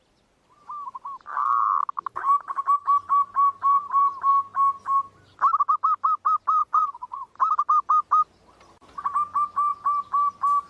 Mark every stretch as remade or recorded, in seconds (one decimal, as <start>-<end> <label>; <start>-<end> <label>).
0.0-6.6 recorded; 6.6-7.3 remade; 7.3-10.7 recorded